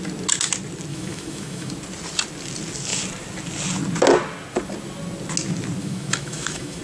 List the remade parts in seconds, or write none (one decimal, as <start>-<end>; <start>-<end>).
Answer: 0.9-1.7; 5.8-6.8

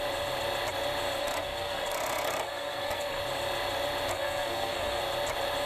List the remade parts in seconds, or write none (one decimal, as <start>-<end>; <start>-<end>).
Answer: 1.2-3.2; 4.1-5.0

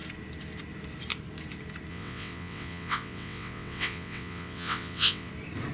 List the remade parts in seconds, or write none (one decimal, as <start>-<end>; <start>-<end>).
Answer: 1.9-5.3